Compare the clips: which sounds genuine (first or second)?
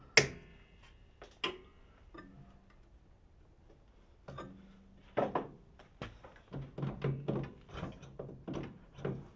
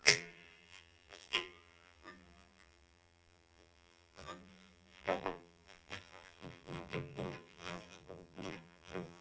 first